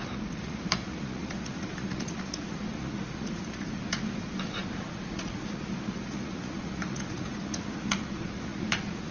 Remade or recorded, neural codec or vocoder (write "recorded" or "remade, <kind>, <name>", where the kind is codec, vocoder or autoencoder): remade, vocoder, Vocos